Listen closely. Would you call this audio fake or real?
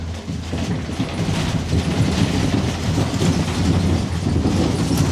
real